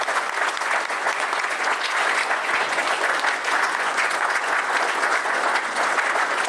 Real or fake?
fake